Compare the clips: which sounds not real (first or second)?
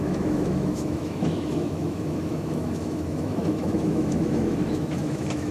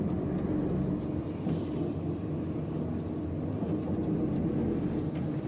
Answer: first